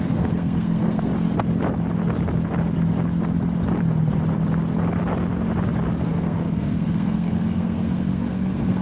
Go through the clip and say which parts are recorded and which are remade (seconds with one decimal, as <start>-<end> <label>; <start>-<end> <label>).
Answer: 0.0-1.1 remade; 1.1-6.1 recorded; 6.1-8.8 remade